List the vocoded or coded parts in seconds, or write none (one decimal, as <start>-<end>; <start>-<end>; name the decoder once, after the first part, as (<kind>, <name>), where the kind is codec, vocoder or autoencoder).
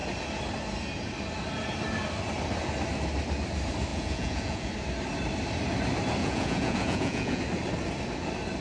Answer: 3.9-4.7 (vocoder, Vocos); 6.2-7.4